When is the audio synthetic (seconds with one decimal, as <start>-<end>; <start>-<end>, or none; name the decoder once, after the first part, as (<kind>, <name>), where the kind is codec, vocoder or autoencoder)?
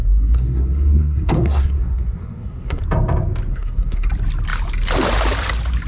0.0-2.8 (codec, SNAC); 3.5-4.1